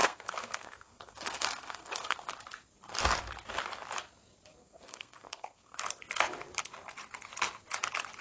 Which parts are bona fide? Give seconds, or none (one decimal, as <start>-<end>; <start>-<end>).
2.3-4.6; 5.8-8.2